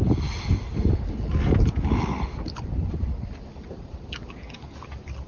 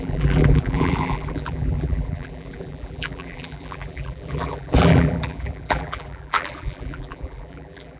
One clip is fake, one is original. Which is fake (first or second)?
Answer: second